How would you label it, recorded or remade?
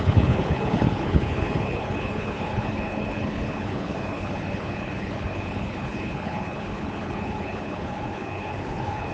remade